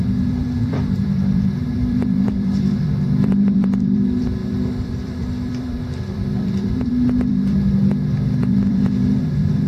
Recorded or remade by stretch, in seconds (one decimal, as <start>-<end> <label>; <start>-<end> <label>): 0.0-7.8 remade; 7.8-8.4 recorded; 8.4-9.7 remade